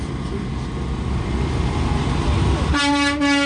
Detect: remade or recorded recorded